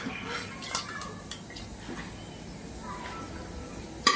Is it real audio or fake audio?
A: real